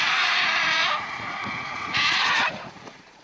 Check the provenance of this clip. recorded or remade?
remade